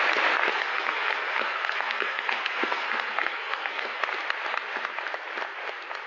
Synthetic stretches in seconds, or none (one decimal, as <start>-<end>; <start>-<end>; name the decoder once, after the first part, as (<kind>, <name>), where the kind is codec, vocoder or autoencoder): 0.5-4.0 (codec, SNAC)